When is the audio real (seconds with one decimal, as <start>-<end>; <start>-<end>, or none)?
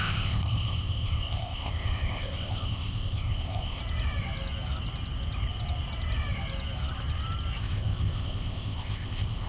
3.8-7.6